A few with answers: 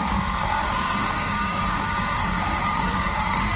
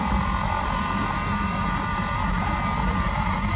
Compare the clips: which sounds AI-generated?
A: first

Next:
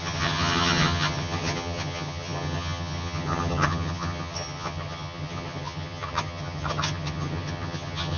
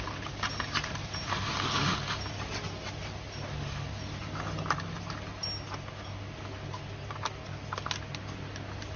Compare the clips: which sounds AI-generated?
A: first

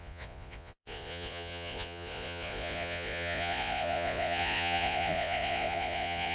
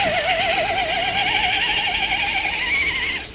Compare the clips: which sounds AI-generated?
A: first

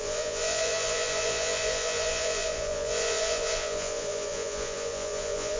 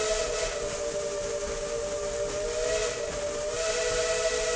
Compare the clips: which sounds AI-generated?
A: first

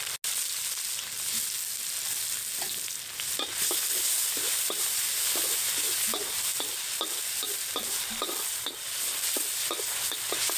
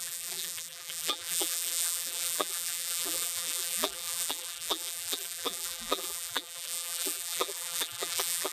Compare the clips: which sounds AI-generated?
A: second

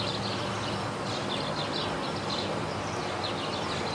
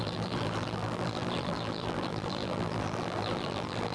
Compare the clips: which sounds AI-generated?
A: second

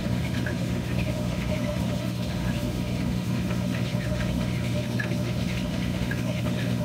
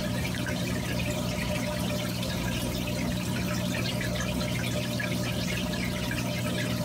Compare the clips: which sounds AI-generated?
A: first